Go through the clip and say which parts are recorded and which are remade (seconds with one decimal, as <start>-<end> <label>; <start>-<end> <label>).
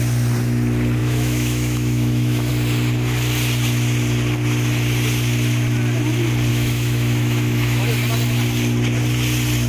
0.0-1.0 recorded; 1.0-2.5 remade; 2.5-6.5 recorded; 6.5-7.9 remade; 7.9-9.7 recorded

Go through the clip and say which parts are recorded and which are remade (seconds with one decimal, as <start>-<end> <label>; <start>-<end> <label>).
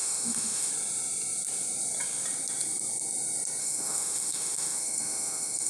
0.0-0.7 remade; 0.7-3.6 recorded; 3.6-5.7 remade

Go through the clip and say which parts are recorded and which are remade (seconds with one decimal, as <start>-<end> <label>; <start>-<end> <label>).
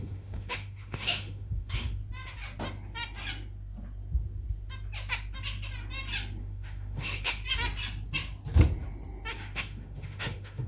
0.0-2.0 remade; 2.0-6.4 recorded; 6.4-7.4 remade; 7.4-9.3 recorded; 9.3-10.7 remade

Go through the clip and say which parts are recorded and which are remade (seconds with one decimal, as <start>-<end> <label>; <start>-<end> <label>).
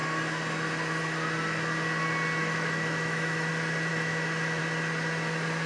0.0-2.4 recorded; 2.4-3.5 remade; 3.5-3.9 recorded; 3.9-4.6 remade; 4.6-5.7 recorded